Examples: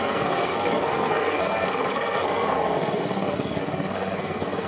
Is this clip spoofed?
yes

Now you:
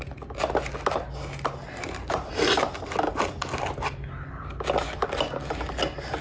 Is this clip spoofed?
no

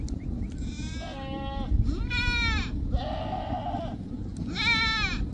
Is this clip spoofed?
no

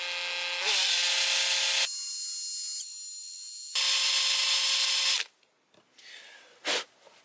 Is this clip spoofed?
no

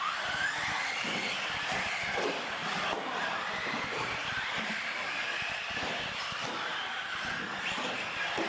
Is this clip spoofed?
no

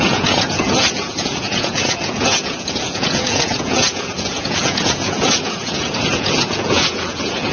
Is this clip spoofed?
yes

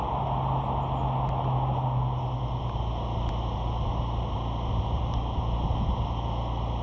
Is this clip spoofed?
no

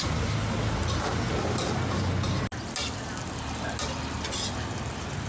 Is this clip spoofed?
no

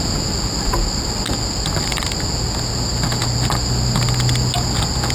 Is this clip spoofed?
no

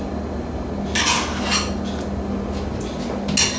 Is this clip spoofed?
no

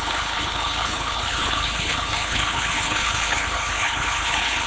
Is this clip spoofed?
yes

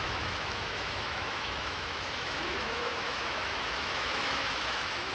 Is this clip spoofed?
yes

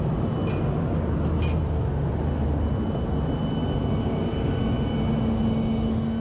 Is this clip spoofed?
no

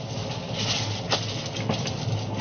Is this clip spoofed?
no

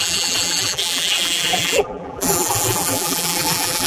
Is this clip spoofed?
yes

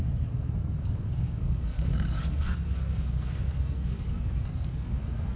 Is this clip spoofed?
yes